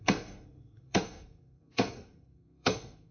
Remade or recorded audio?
remade